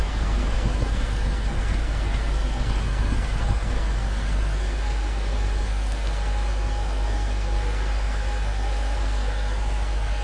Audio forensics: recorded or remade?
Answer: remade